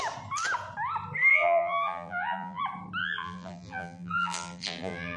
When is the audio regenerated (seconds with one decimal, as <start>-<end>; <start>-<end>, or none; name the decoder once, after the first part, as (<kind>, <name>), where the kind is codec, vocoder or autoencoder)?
1.3-2.6 (vocoder, BigVGAN v2); 3.0-5.2